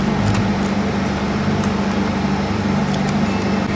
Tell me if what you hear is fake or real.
real